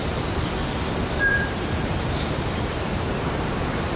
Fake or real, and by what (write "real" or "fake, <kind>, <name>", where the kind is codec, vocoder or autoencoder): fake, vocoder, BigVGAN v2